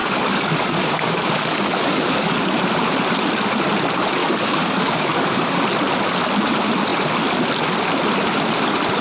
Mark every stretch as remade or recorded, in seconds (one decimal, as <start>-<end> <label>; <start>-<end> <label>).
0.0-2.4 remade; 2.4-4.2 recorded; 4.2-5.6 remade; 5.6-9.0 recorded